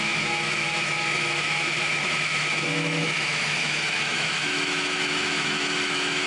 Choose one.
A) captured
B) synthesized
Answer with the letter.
B